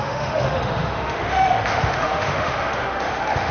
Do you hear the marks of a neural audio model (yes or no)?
yes